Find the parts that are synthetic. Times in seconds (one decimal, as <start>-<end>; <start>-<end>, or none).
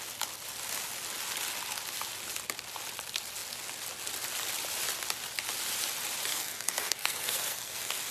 6.3-8.1